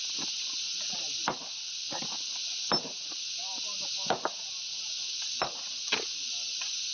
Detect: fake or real real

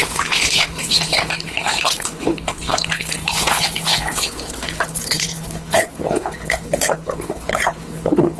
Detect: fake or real fake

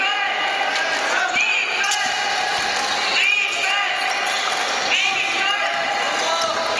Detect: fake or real real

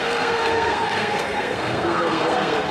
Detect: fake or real fake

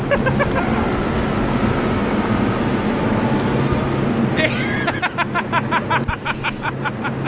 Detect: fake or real real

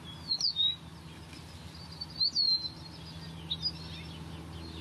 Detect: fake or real real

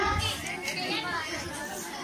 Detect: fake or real real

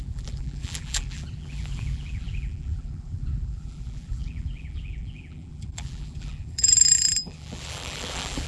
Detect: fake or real fake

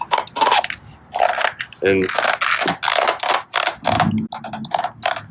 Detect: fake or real real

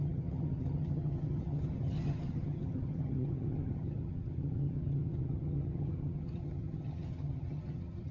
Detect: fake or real fake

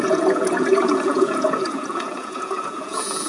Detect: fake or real fake